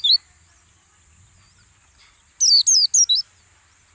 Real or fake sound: real